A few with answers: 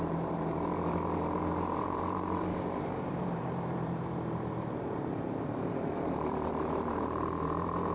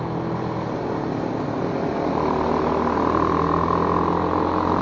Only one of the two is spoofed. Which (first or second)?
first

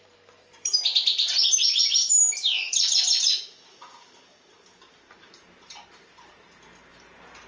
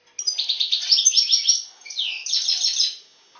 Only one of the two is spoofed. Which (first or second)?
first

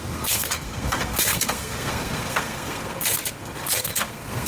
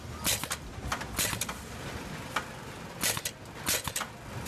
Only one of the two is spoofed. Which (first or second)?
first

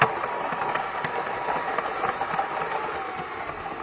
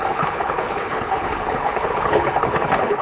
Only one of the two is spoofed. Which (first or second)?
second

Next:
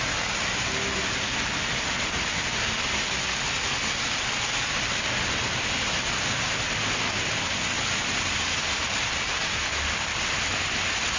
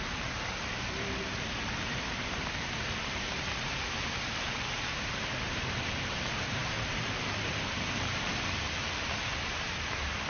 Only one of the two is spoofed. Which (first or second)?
second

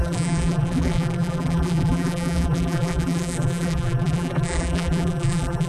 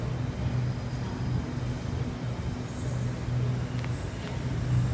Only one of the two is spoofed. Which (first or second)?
first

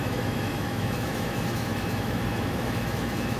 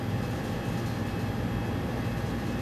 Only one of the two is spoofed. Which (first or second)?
first